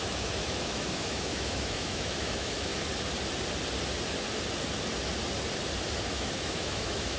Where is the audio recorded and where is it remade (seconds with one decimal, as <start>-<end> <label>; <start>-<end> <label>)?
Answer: 0.0-2.7 remade; 2.7-6.1 recorded; 6.1-7.2 remade